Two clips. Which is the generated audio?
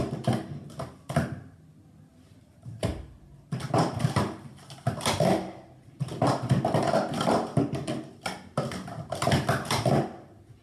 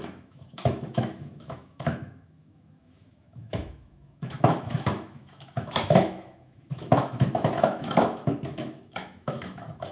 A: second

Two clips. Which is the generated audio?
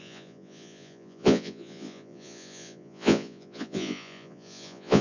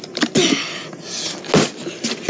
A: first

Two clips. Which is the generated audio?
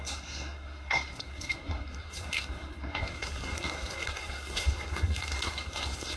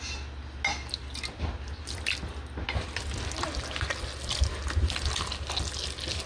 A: first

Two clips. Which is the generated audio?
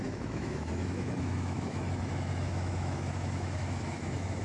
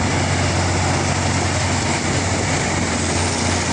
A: first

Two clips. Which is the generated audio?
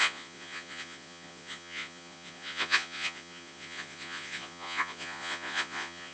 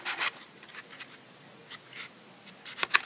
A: first